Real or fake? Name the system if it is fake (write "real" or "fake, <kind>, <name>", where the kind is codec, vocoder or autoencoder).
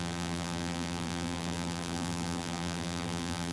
fake, vocoder, BigVGAN v2